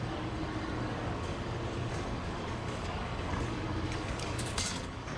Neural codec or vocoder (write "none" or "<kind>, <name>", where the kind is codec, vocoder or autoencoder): codec, DAC